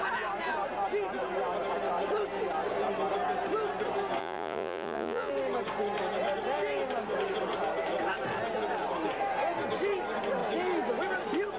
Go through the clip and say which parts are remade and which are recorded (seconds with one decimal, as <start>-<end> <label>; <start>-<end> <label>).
0.0-4.2 recorded; 4.2-5.3 remade; 5.3-11.6 recorded